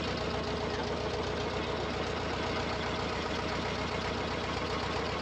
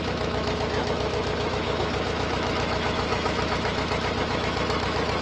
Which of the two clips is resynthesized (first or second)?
second